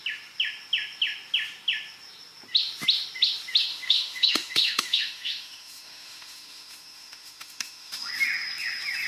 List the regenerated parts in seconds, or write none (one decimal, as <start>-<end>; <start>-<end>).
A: 3.7-8.1